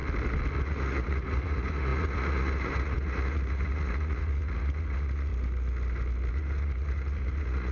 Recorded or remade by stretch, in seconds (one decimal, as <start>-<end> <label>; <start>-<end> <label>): 0.0-0.6 recorded; 0.6-5.3 remade; 5.3-6.3 recorded; 6.3-7.7 remade